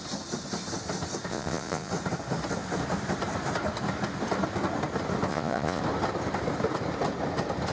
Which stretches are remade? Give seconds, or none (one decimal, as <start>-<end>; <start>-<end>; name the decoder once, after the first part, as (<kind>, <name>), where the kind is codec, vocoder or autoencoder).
1.3-1.9 (vocoder, Vocos); 5.3-5.8